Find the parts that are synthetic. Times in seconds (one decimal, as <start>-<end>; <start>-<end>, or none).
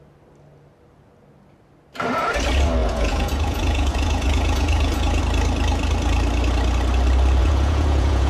2.8-5.2; 7.4-8.3